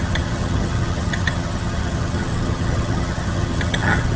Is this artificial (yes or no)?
yes